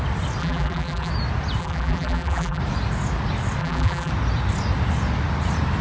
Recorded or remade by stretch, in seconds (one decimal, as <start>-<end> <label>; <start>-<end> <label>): 0.0-0.4 recorded; 0.4-1.1 remade; 1.1-1.6 recorded; 1.6-2.6 remade; 2.6-3.6 recorded; 3.6-4.1 remade; 4.1-5.8 recorded